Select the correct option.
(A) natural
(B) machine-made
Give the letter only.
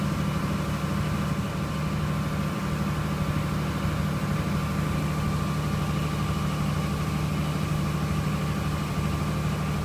A